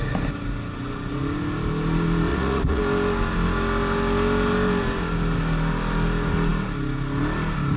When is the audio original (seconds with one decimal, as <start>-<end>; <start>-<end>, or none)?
0.0-2.3; 2.8-7.8